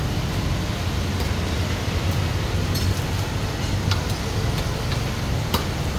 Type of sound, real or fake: real